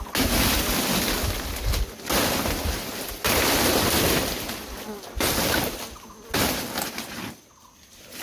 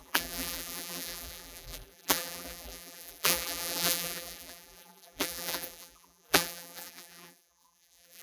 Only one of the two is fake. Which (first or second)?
second